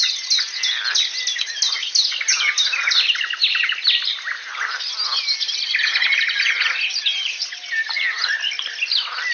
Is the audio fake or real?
real